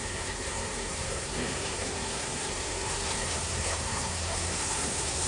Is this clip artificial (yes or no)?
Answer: yes